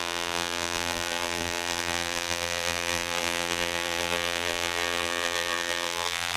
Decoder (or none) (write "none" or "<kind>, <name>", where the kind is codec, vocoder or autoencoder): vocoder, BigVGAN v2